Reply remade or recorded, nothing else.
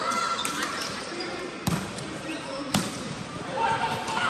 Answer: remade